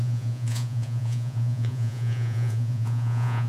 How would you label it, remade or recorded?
remade